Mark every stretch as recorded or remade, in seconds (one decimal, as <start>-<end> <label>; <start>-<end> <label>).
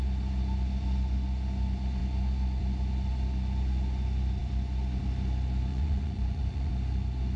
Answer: 0.0-5.7 recorded; 5.7-6.7 remade; 6.7-7.4 recorded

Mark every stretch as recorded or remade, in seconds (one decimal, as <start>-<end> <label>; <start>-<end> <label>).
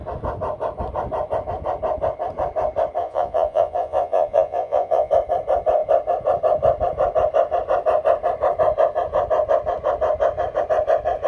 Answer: 0.0-3.0 recorded; 3.0-5.1 remade; 5.1-11.3 recorded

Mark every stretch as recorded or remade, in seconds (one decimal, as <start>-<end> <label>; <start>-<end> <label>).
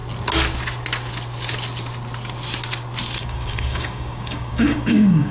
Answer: 0.0-3.2 recorded; 3.2-5.3 remade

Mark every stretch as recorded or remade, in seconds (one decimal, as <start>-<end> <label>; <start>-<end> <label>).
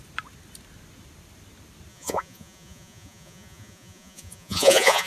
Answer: 0.0-1.9 recorded; 1.9-5.1 remade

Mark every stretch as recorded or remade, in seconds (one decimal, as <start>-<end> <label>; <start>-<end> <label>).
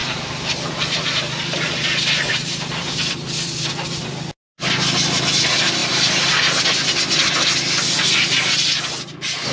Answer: 0.0-4.3 remade; 4.3-9.5 recorded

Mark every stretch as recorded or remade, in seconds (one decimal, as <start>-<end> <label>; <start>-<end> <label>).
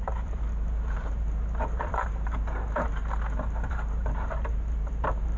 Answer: 0.0-3.0 remade; 3.0-3.7 recorded; 3.7-5.4 remade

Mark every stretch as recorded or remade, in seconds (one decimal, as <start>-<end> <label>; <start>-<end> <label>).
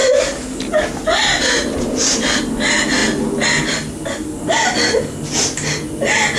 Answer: 0.0-6.4 recorded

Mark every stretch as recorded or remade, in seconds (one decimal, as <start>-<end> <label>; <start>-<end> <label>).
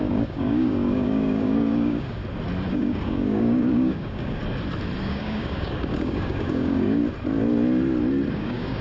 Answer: 0.0-2.2 remade; 2.2-2.7 recorded; 2.7-4.4 remade; 4.4-5.0 recorded; 5.0-7.0 remade; 7.0-8.3 recorded; 8.3-8.8 remade